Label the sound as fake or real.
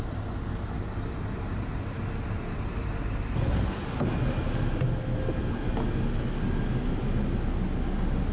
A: real